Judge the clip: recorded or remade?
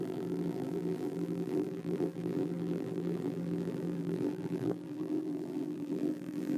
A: remade